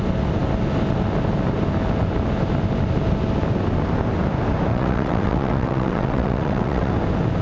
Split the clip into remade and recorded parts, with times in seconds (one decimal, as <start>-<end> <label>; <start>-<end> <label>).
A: 0.0-4.7 recorded; 4.7-6.9 remade; 6.9-7.4 recorded